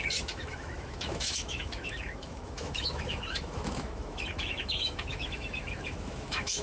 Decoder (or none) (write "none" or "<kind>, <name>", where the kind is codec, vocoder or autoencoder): autoencoder, DAC-VAE